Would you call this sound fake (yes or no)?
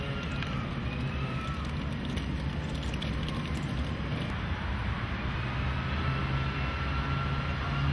no